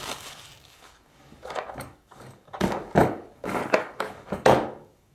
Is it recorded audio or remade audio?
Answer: remade